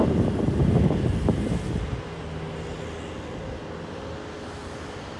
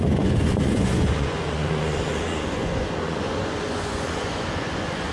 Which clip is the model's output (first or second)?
second